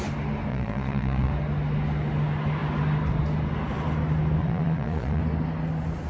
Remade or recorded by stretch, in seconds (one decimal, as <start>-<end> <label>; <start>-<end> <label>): 0.0-0.5 recorded; 0.5-1.3 remade; 1.3-4.4 recorded; 4.4-5.2 remade; 5.2-6.1 recorded